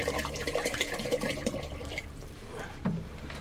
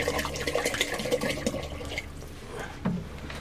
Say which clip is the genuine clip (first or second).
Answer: second